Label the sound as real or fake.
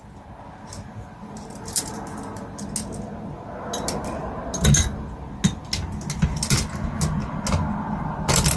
real